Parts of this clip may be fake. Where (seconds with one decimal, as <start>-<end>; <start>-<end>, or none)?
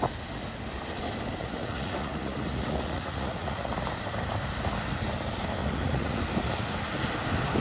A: 1.4-3.7; 5.6-6.2